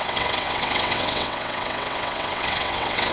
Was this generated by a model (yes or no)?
yes